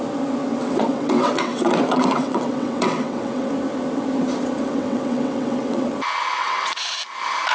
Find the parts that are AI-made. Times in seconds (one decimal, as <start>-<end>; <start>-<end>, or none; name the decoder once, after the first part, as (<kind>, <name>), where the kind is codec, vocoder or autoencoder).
0.5-3.5 (vocoder, WaveNeXt); 4.6-5.9; 6.4-7.0